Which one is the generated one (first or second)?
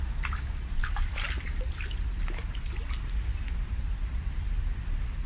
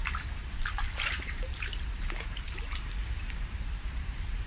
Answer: second